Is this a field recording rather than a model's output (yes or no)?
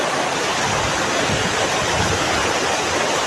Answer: yes